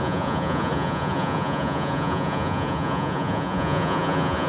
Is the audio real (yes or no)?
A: no